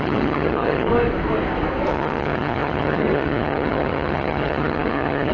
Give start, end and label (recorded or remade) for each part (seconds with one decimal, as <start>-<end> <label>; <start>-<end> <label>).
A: 0.0-0.9 remade; 0.9-1.9 recorded; 1.9-5.3 remade